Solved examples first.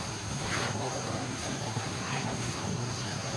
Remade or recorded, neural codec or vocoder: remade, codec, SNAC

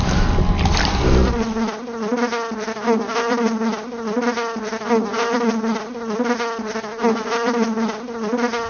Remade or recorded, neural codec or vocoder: recorded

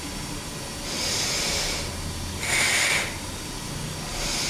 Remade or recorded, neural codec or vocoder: recorded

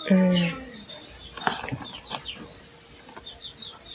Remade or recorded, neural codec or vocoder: recorded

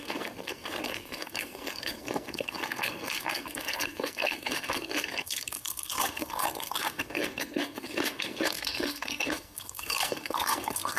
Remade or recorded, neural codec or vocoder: remade, codec, SNAC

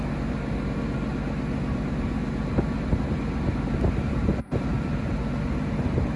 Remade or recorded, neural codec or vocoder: recorded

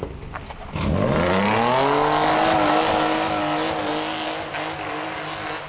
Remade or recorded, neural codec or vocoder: recorded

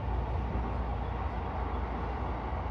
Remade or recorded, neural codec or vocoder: recorded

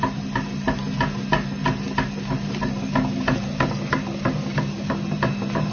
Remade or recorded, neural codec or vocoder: recorded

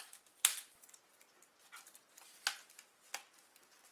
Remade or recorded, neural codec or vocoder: recorded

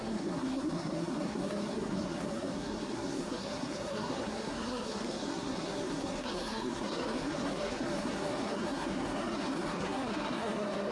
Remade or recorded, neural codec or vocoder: remade, codec, SNAC